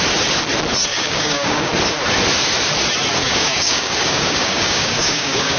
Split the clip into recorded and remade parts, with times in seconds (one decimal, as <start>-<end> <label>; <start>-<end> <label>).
0.0-0.9 recorded; 0.9-1.7 remade; 1.7-3.2 recorded; 3.2-5.6 remade